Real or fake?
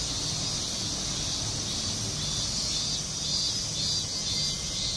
real